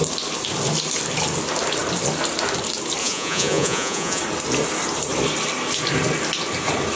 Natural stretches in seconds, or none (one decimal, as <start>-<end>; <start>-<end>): 0.0-3.0; 4.2-7.0